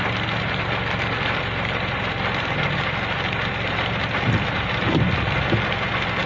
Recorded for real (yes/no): no